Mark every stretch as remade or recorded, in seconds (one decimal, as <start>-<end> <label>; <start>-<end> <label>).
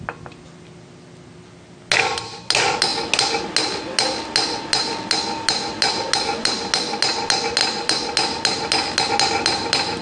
0.0-10.0 recorded